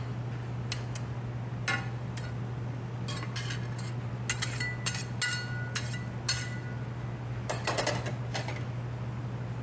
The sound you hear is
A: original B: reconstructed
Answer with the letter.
A